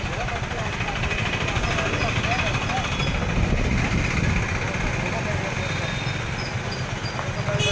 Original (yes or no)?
yes